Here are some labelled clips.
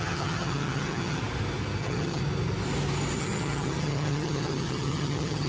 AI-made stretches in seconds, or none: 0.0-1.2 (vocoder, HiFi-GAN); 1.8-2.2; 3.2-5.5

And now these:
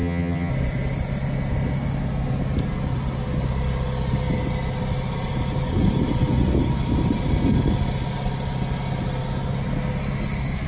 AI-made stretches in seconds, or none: 0.0-0.5 (vocoder, HiFi-GAN)

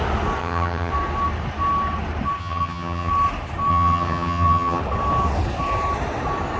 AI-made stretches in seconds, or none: 0.4-0.9 (vocoder, HiFi-GAN); 2.4-3.1; 3.7-4.8

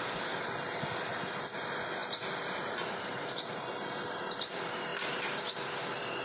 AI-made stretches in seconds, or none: none

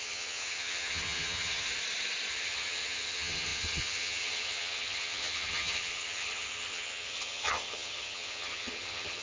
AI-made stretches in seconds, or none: 0.0-1.7 (vocoder, HiFi-GAN); 2.3-9.2